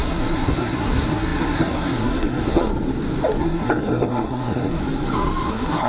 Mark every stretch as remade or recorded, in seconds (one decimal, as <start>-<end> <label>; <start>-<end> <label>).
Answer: 0.0-2.7 remade; 2.7-3.4 recorded; 3.4-4.8 remade; 4.8-5.5 recorded; 5.5-5.9 remade